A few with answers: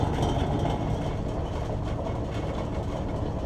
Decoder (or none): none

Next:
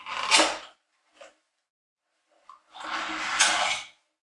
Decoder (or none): none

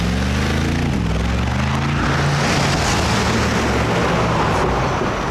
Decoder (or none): none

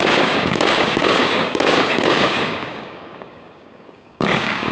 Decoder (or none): codec, DAC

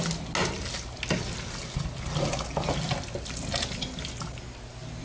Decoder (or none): none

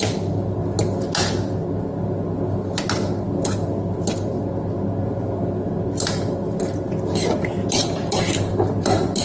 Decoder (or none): none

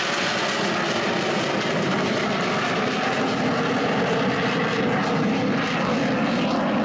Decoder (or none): none